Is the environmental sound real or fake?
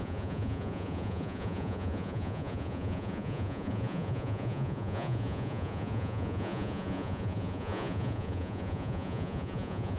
fake